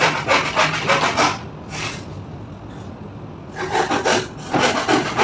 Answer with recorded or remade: recorded